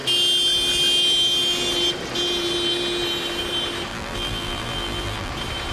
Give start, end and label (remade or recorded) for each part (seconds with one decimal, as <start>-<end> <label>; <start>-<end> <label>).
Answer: 0.0-3.9 recorded; 3.9-5.3 remade; 5.3-5.7 recorded